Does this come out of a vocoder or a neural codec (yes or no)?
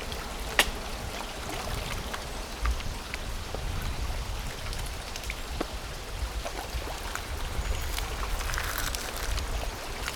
no